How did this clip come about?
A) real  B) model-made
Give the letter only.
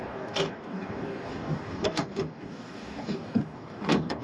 B